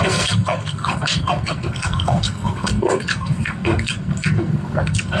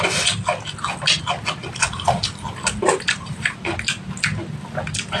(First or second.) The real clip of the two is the second